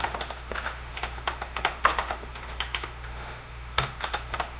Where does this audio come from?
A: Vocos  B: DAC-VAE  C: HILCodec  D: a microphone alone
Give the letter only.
B